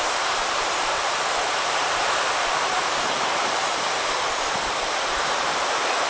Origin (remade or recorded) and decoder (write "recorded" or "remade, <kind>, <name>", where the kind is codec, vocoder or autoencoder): remade, vocoder, BigVGAN v2